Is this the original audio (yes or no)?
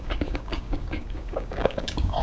no